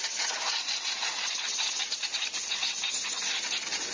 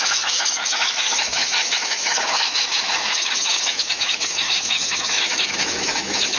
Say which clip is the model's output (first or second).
second